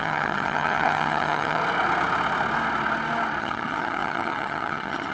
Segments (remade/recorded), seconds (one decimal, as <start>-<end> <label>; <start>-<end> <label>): 0.0-1.6 remade; 1.6-3.4 recorded; 3.4-5.1 remade